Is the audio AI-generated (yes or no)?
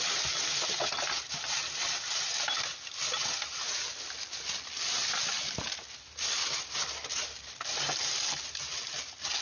no